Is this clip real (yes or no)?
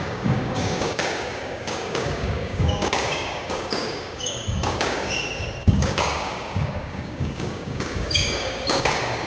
no